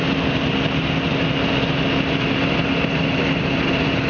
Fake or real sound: real